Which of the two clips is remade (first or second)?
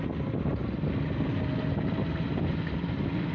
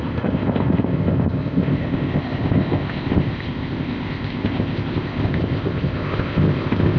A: second